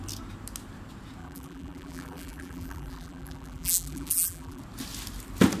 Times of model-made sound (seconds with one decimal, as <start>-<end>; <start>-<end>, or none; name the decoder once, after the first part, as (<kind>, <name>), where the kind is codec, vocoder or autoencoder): 1.2-4.6 (vocoder, BigVGAN v2)